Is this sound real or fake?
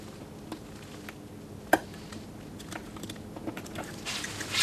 real